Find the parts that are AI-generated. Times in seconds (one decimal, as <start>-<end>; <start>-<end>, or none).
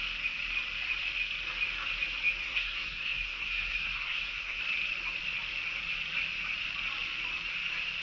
2.4-4.6